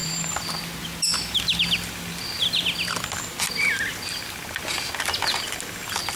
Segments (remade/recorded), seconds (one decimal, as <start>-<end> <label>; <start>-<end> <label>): 0.0-6.2 recorded